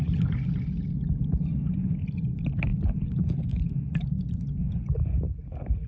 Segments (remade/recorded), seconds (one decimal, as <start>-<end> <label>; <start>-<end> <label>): 0.0-5.9 recorded